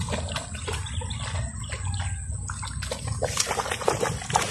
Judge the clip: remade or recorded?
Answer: recorded